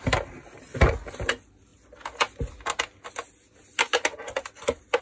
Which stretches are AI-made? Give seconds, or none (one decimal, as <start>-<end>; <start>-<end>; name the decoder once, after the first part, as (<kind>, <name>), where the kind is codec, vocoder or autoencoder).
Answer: none